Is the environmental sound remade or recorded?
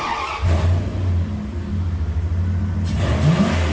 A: recorded